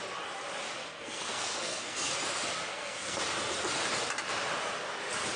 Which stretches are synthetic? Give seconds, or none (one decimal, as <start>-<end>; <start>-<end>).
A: 0.8-2.1; 2.7-3.2